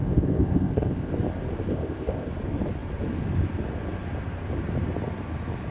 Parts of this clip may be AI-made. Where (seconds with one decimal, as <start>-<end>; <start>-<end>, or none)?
0.0-1.1; 1.7-2.3